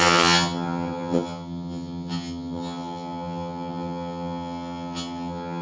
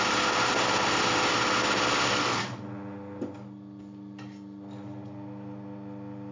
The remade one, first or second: first